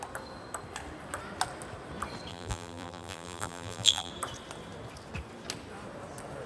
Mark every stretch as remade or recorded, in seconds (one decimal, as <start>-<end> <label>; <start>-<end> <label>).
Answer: 0.0-2.3 recorded; 2.3-4.1 remade; 4.1-6.5 recorded